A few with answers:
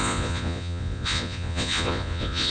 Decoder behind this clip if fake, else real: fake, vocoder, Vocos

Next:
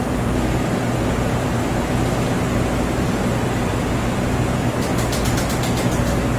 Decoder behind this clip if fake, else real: real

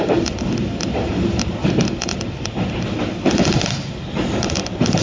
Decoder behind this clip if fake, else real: real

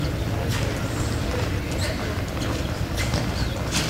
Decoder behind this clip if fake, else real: real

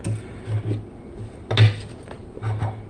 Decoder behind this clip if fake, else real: real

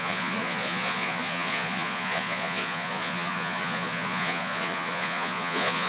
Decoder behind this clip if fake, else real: fake, vocoder, Vocos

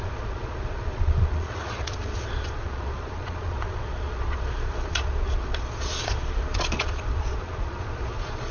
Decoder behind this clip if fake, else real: fake, vocoder, Vocos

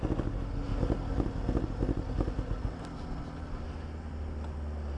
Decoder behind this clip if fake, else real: real